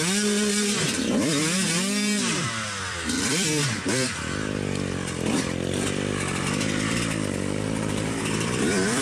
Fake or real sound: fake